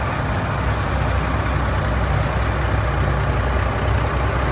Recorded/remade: recorded